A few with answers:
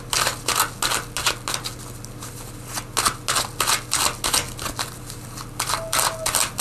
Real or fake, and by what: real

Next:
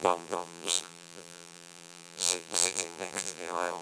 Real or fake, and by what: fake, vocoder, BigVGAN v2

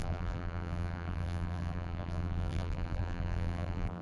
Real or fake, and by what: fake, vocoder, BigVGAN v2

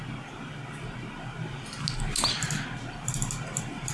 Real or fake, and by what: real